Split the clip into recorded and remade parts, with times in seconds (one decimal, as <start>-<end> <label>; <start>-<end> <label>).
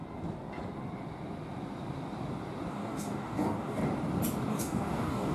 0.0-2.7 recorded; 2.7-3.8 remade; 3.8-4.5 recorded; 4.5-5.3 remade